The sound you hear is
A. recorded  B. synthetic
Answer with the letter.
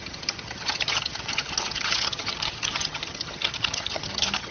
B